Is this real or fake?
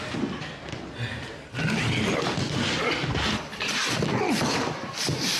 real